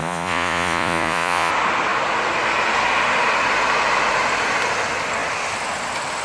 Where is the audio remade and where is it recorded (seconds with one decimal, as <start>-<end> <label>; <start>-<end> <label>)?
0.0-1.5 remade; 1.5-6.2 recorded